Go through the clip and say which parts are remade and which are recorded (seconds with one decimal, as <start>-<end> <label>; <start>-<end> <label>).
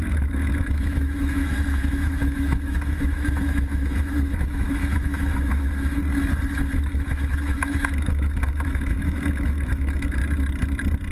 0.0-6.0 remade; 6.0-6.9 recorded; 6.9-10.2 remade; 10.2-11.1 recorded